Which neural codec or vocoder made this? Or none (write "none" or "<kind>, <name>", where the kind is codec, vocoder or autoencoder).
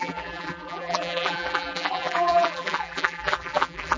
vocoder, BigVGAN v2